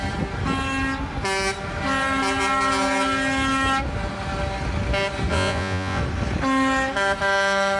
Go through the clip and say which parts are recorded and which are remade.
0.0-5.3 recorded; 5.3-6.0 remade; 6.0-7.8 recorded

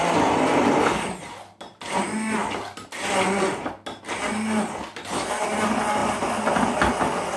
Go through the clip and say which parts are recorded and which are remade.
0.0-7.4 recorded

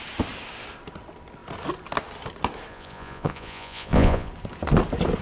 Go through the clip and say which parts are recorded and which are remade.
0.0-2.7 recorded; 2.7-4.3 remade; 4.3-5.2 recorded

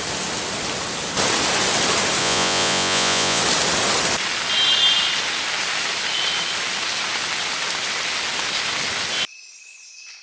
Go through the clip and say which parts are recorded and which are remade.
0.0-2.2 recorded; 2.2-3.4 remade; 3.4-10.2 recorded

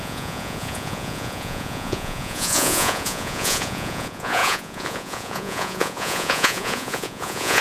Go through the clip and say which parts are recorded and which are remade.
0.0-7.6 remade

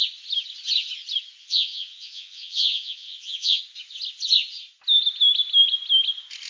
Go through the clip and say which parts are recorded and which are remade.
0.0-1.4 recorded; 1.4-3.6 remade; 3.6-6.5 recorded

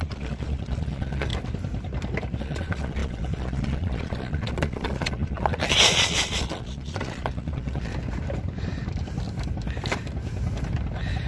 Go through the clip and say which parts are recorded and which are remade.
0.0-1.3 remade; 1.3-2.4 recorded; 2.4-7.9 remade; 7.9-11.3 recorded

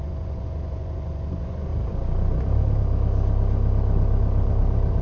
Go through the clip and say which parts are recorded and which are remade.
0.0-1.7 remade; 1.7-5.0 recorded